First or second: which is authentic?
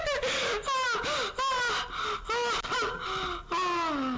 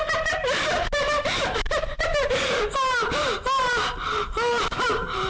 first